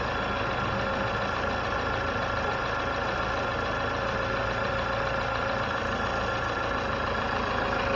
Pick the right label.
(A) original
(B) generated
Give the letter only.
A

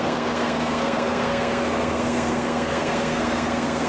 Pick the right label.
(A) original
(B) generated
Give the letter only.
B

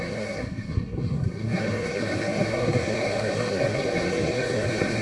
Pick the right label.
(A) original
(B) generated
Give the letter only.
B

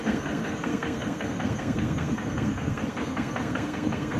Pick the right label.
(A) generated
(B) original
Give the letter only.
A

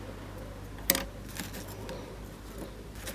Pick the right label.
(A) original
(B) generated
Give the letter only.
A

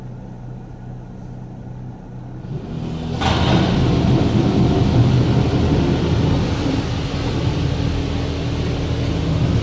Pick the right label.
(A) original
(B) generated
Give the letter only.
A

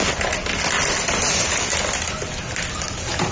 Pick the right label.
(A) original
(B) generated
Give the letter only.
A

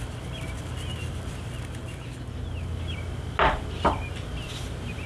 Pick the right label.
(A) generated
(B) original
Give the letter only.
B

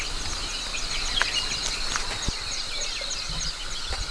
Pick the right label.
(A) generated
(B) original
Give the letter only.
B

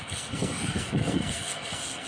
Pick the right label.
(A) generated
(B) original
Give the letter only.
A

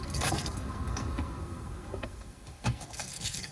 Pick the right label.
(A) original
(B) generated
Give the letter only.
B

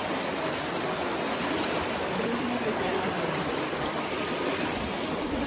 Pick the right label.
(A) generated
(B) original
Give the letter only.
B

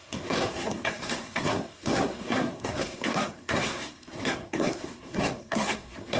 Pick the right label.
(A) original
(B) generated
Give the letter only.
B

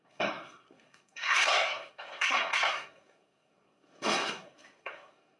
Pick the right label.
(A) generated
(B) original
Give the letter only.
A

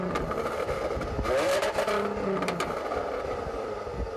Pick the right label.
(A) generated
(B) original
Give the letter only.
B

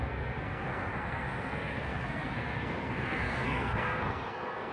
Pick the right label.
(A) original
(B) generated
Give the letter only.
B